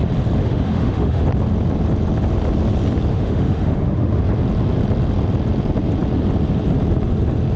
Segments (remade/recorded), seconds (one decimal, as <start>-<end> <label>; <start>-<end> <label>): 0.0-0.4 recorded; 0.4-1.2 remade; 1.2-3.1 recorded; 3.1-4.2 remade; 4.2-7.6 recorded